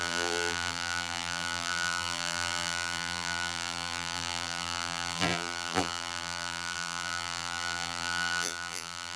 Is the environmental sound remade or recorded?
remade